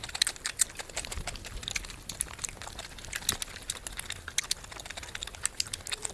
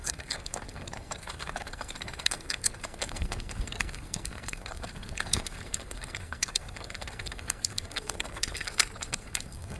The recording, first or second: first